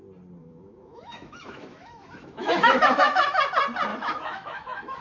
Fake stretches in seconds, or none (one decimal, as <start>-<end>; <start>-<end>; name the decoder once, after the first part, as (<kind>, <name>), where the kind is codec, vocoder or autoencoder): 0.4-3.4 (autoencoder, DAC-VAE); 3.9-5.0